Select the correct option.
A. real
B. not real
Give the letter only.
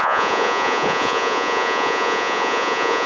B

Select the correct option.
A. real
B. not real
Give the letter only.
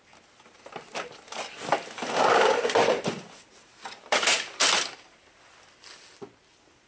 A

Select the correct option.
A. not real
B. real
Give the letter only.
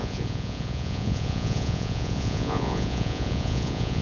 A